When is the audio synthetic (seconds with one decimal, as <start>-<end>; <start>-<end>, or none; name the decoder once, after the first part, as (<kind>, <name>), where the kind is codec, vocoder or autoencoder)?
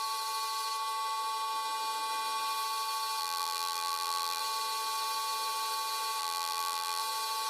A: 3.2-4.4 (vocoder, BigVGAN v2); 6.2-7.0